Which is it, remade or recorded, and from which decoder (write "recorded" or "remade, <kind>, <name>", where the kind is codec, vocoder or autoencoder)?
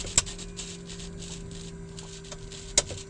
recorded